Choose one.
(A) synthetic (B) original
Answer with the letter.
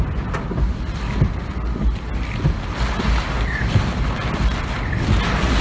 B